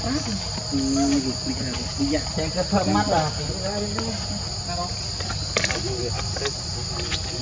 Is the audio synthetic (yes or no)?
no